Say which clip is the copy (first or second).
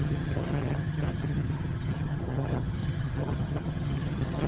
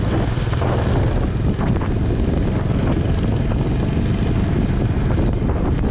first